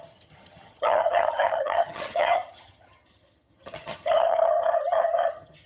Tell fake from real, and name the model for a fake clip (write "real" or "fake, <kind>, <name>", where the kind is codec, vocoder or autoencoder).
fake, vocoder, HiFi-GAN